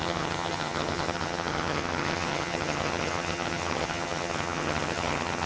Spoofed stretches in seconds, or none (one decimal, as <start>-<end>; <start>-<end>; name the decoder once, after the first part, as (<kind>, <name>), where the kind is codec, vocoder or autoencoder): 0.0-5.5 (vocoder, HiFi-GAN)